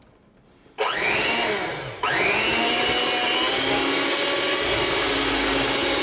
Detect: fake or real real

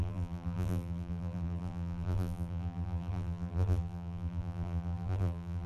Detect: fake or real fake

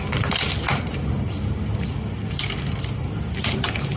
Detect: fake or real real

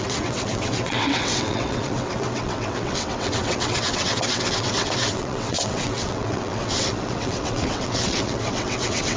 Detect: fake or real fake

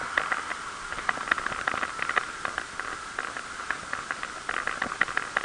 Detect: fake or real real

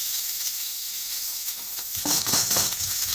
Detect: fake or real fake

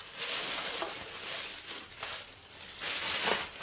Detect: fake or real real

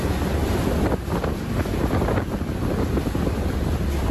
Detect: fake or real real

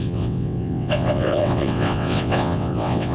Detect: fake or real fake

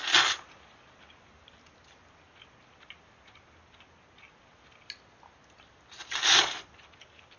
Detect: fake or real real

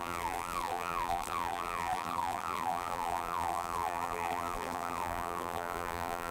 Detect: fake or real fake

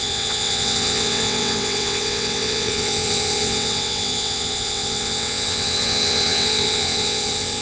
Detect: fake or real fake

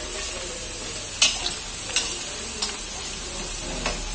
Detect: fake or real real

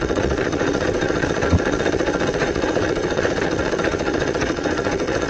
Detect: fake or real fake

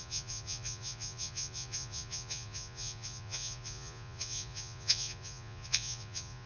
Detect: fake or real fake